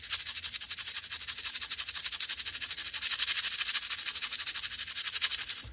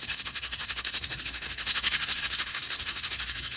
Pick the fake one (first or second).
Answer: second